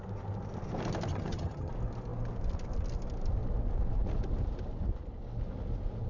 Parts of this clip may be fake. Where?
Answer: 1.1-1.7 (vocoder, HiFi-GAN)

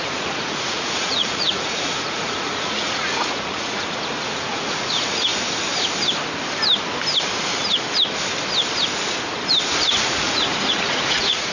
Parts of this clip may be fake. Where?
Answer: 0.0-5.3 (vocoder, Vocos); 10.0-11.5

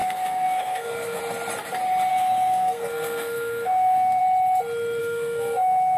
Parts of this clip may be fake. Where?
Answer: 0.0-1.2 (codec, SNAC); 2.1-4.2; 5.0-6.0

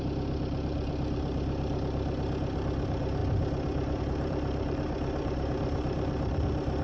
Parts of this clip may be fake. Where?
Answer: 0.0-3.2 (vocoder, BigVGAN v2); 4.0-6.8